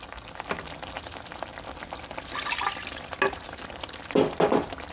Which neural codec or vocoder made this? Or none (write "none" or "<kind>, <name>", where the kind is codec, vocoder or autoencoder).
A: none